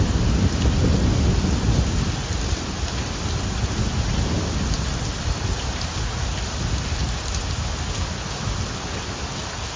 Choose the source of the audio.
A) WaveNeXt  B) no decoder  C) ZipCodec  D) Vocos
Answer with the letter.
B